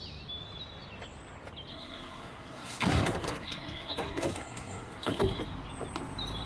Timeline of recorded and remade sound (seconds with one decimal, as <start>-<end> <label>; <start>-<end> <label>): 0.0-1.7 recorded; 1.7-5.4 remade; 5.4-6.5 recorded